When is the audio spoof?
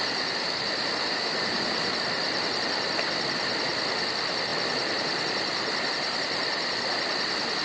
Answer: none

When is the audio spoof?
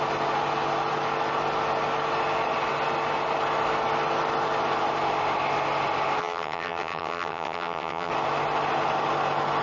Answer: 6.2-8.1 (vocoder, HiFi-GAN)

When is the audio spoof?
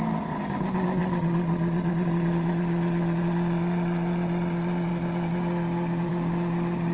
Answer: none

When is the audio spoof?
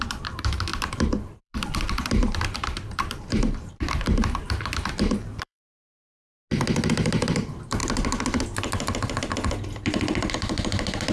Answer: 0.0-6.0 (vocoder, BigVGAN v2); 6.9-7.8; 10.3-11.1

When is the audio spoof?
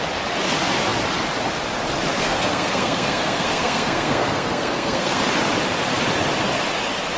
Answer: 2.1-5.2 (codec, SNAC)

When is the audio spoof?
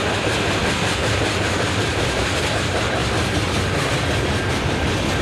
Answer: 0.6-5.2 (vocoder, BigVGAN v2)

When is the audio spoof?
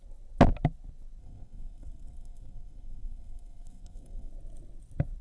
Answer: 1.2-4.3 (codec, SNAC)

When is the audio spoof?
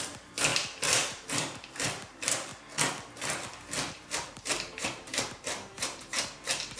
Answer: 0.0-2.5 (vocoder, BigVGAN v2); 3.9-6.8